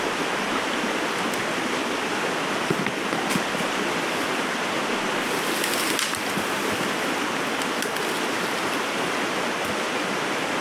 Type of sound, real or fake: real